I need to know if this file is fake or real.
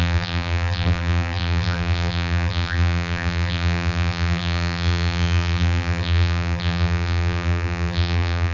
fake